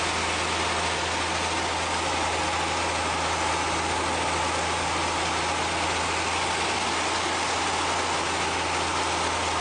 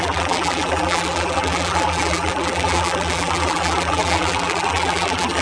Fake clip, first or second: second